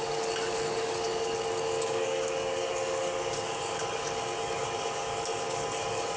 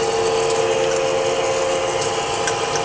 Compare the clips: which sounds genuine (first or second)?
second